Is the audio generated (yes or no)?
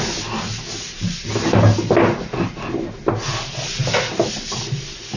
no